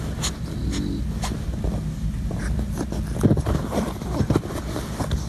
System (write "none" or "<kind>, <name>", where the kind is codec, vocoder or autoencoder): none